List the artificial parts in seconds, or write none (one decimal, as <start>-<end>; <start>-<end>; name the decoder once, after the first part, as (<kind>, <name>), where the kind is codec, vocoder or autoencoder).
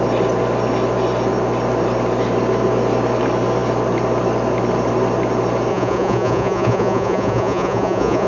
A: 5.7-8.3 (vocoder, Vocos)